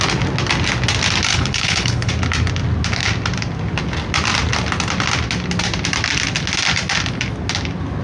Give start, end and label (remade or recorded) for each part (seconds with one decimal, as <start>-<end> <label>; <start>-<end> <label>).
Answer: 0.0-1.3 recorded; 1.3-2.1 remade; 2.1-8.0 recorded